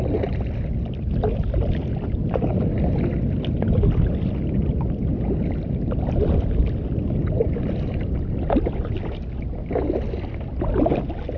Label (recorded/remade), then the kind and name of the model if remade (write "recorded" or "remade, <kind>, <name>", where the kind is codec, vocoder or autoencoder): recorded